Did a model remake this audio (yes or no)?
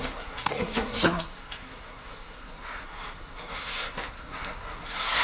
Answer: yes